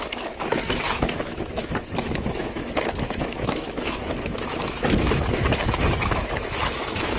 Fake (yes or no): yes